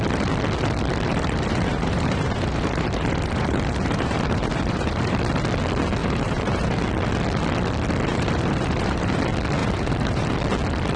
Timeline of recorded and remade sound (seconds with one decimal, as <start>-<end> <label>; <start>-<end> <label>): 0.0-1.1 recorded; 1.1-5.2 remade; 5.2-6.0 recorded; 6.0-6.8 remade; 6.8-8.1 recorded; 8.1-9.2 remade; 9.2-9.6 recorded; 9.6-10.3 remade; 10.3-11.0 recorded